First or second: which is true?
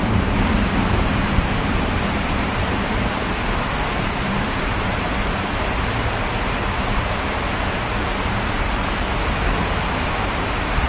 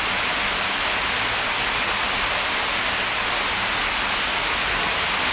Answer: second